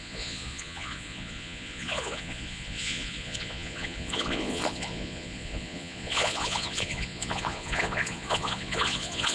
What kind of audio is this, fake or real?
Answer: fake